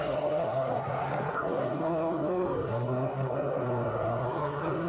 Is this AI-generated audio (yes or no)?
yes